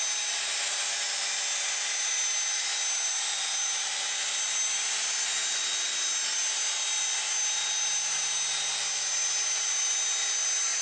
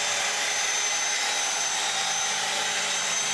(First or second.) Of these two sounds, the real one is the first